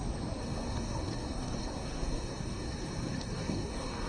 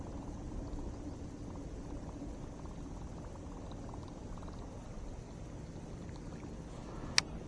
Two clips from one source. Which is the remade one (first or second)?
first